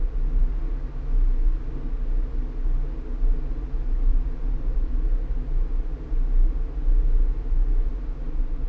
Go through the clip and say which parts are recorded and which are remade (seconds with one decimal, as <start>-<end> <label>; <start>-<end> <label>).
0.0-4.1 recorded; 4.1-4.9 remade; 4.9-8.7 recorded